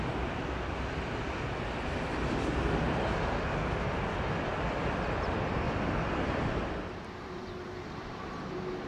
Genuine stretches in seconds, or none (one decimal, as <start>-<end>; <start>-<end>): 0.0-4.5; 8.1-8.9